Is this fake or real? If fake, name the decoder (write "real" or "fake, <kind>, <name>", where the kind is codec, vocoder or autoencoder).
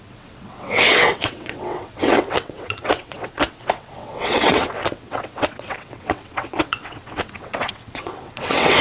fake, vocoder, WaveNeXt